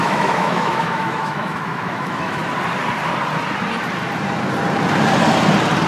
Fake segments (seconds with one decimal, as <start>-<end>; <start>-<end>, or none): 0.0-2.4